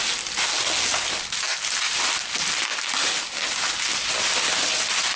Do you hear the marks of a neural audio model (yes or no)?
no